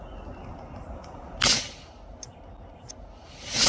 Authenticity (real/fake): real